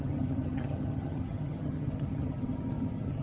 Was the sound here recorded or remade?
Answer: remade